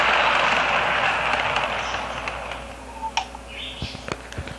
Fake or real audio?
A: real